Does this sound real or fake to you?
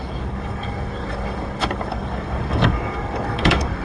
fake